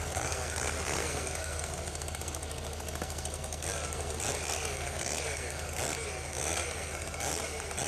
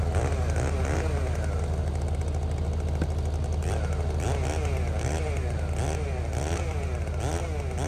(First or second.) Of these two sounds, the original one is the second